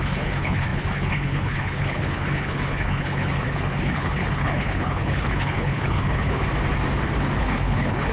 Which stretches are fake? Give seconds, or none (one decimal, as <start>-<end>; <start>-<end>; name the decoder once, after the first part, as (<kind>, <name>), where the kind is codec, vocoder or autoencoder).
0.0-6.4 (codec, HILCodec); 7.4-8.1